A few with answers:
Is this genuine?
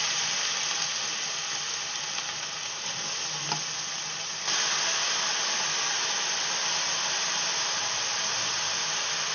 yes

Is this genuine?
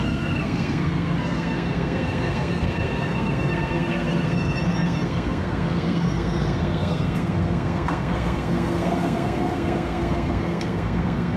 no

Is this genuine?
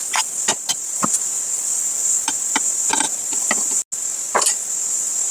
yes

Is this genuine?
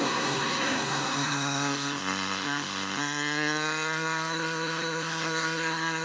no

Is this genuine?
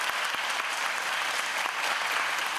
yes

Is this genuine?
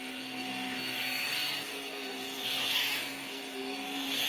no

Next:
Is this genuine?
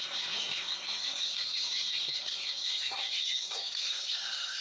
no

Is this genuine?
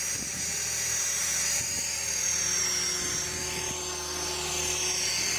yes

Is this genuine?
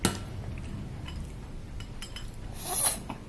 yes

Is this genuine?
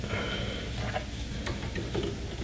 yes